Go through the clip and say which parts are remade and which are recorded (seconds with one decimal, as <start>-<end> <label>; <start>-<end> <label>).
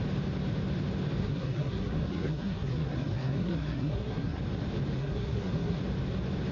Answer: 0.0-1.2 recorded; 1.2-4.4 remade; 4.4-5.0 recorded; 5.0-5.8 remade; 5.8-6.5 recorded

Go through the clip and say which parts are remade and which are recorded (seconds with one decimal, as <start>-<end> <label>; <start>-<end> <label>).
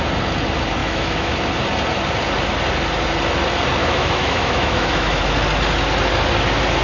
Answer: 0.0-0.8 recorded; 0.8-1.3 remade; 1.3-3.8 recorded; 3.8-5.2 remade; 5.2-6.8 recorded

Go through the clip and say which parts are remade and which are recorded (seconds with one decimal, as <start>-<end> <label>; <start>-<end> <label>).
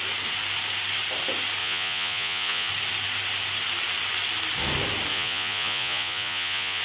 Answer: 0.0-1.6 recorded; 1.6-2.7 remade; 2.7-5.1 recorded; 5.1-6.8 remade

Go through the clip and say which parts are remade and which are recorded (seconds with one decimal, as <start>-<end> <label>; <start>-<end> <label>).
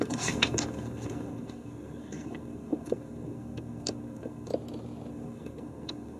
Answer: 0.0-4.5 remade; 4.5-5.1 recorded; 5.1-6.2 remade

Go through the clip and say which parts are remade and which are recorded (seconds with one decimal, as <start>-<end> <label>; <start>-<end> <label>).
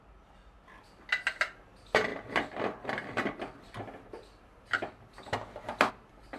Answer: 0.0-6.4 recorded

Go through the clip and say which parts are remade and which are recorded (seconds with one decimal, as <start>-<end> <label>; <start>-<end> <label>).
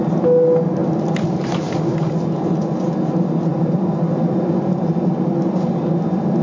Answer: 0.0-3.5 recorded; 3.5-4.5 remade; 4.5-6.4 recorded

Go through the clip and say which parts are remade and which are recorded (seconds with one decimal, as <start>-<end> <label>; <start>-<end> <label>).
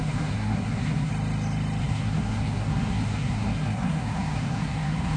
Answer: 0.0-1.1 remade; 1.1-1.8 recorded; 1.8-5.2 remade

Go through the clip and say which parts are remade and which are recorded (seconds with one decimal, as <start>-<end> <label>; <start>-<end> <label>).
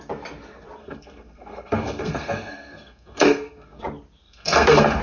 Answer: 0.0-0.8 recorded; 0.8-3.8 remade; 3.8-4.2 recorded; 4.2-5.0 remade